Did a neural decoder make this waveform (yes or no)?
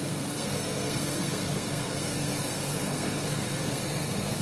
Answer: yes